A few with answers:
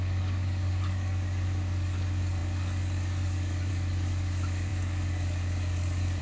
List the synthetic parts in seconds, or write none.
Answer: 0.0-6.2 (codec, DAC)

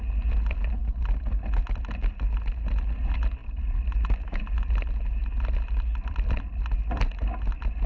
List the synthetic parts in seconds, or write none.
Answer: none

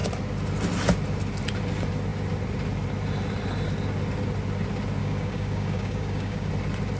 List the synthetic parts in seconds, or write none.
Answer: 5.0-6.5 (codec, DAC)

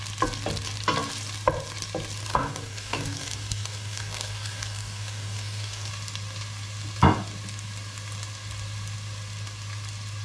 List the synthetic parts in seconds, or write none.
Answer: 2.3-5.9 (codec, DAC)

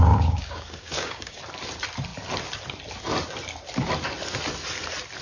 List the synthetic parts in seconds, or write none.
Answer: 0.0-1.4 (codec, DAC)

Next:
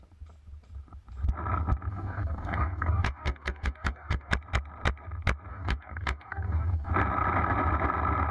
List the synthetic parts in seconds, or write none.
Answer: 1.9-4.3 (codec, DAC); 5.5-6.9